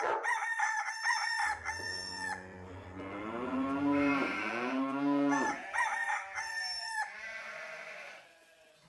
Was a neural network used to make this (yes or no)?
yes